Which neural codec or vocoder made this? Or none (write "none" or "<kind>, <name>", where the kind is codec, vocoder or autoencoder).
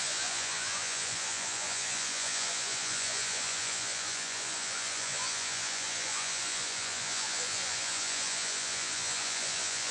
vocoder, Vocos